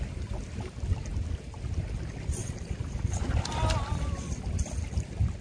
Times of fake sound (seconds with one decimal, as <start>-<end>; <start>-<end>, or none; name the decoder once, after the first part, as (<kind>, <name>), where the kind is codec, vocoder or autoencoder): none